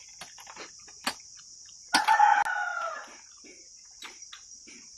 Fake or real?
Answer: real